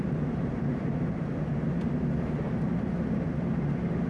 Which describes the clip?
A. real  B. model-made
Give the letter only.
A